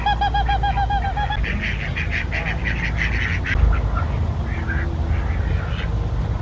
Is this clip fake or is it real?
real